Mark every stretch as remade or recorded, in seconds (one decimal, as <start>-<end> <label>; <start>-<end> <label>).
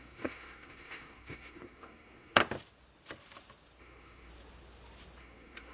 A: 0.0-2.4 remade; 2.4-3.8 recorded; 3.8-4.3 remade; 4.3-5.2 recorded; 5.2-5.7 remade